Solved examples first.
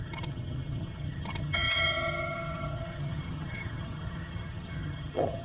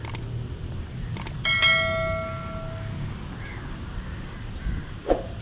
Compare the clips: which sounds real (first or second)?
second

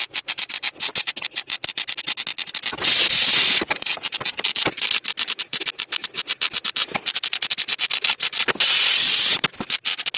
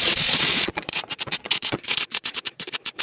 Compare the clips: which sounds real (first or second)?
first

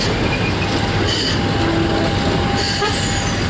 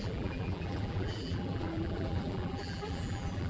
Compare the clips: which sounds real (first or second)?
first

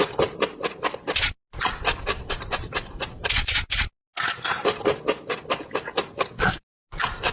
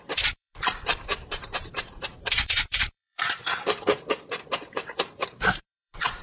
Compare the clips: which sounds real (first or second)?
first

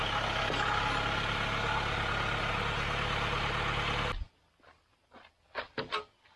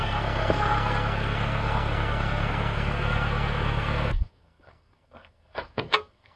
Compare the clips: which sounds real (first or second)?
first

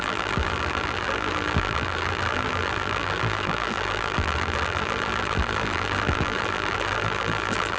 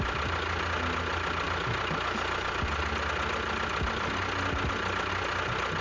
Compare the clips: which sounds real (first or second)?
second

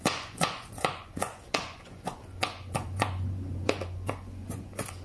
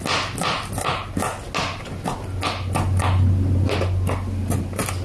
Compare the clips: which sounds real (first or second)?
second